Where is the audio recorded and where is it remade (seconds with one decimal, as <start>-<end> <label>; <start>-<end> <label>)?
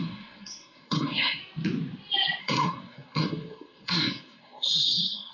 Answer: 0.0-1.4 remade; 1.4-2.4 recorded; 2.4-5.3 remade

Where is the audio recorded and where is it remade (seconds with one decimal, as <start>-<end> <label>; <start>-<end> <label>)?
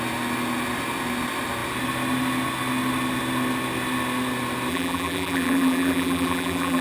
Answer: 0.0-4.7 recorded; 4.7-6.8 remade